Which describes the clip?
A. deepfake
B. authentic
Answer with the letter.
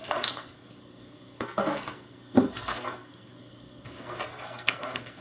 A